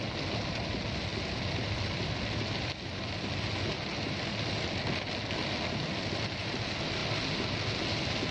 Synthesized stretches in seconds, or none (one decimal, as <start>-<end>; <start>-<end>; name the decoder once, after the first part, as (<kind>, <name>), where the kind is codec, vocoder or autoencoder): none